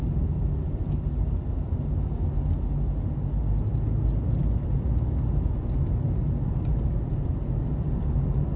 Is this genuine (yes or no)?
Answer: yes